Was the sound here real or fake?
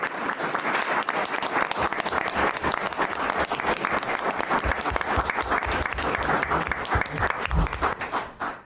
fake